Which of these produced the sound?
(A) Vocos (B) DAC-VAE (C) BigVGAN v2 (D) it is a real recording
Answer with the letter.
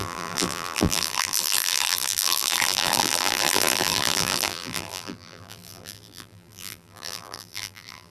C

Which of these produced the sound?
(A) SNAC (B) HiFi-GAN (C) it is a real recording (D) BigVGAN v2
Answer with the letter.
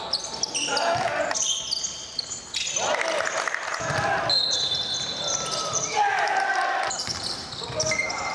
C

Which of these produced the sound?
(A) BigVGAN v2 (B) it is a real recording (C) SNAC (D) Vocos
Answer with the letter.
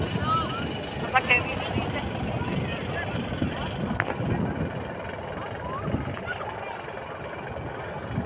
B